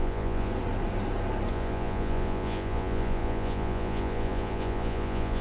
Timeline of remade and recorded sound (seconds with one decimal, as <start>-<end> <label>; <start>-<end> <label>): 0.0-0.5 remade; 0.5-1.5 recorded; 1.5-5.4 remade